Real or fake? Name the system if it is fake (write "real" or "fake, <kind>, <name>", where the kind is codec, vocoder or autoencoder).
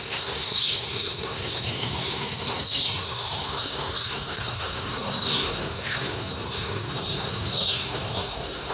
fake, codec, SNAC